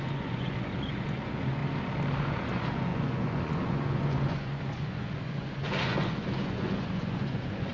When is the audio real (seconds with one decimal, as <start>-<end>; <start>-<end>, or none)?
1.6-2.2